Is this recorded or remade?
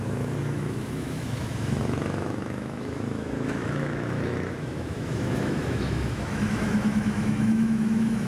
remade